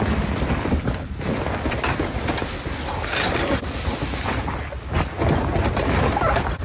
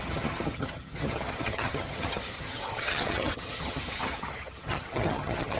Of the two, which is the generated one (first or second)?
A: second